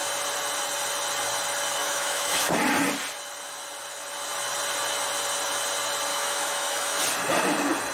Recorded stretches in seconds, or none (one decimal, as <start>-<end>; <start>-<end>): 0.0-1.8; 2.5-6.1; 7.0-7.9